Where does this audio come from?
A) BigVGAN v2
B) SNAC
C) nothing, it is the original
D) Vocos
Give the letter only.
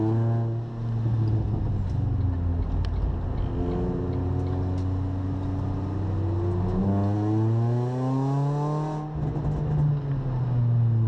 C